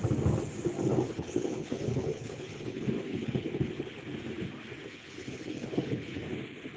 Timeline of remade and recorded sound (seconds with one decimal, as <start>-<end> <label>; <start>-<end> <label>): 0.0-0.9 recorded; 0.9-4.0 remade; 4.0-4.8 recorded; 4.8-6.2 remade; 6.2-6.8 recorded